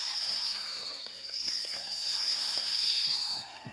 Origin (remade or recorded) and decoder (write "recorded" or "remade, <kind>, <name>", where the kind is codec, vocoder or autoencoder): remade, codec, SNAC